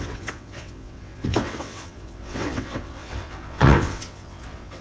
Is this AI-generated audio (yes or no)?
yes